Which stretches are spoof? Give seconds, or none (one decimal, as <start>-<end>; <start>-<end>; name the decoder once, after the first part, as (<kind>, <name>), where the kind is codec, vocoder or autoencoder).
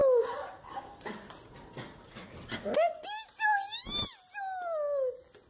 none